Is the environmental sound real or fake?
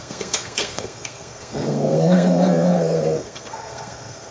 fake